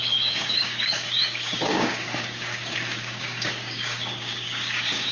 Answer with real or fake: fake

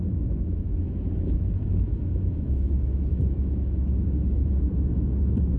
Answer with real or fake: fake